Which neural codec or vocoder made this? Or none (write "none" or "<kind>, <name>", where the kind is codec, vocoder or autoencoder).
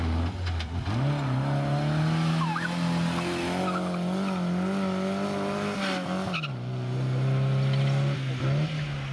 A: none